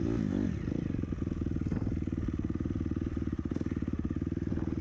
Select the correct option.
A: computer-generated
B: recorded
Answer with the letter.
B